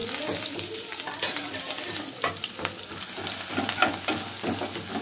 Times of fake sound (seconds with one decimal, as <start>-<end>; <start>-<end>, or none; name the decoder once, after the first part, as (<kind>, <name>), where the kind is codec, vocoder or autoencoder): 0.0-3.0 (vocoder, BigVGAN v2)